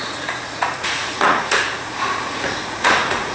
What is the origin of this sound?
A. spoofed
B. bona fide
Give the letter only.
A